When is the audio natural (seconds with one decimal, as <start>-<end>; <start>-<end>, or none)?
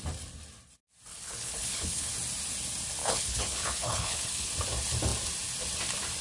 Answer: 0.0-1.1; 2.1-3.0; 4.5-6.2